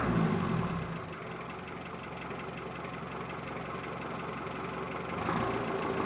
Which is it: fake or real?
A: real